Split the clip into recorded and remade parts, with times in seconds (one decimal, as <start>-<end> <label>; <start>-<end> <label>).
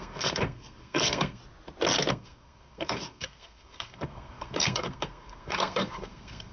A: 0.0-1.4 remade; 1.4-2.1 recorded; 2.1-6.5 remade